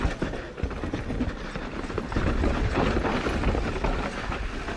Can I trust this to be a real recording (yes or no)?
yes